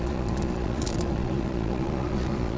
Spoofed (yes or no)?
yes